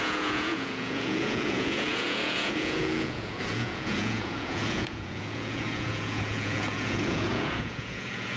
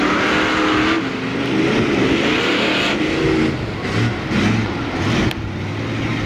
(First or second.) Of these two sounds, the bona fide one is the second